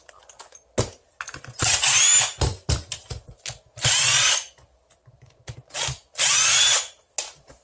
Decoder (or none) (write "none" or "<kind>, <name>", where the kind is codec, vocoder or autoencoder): none